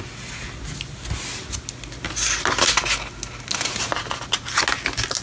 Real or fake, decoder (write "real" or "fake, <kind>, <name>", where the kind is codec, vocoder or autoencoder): real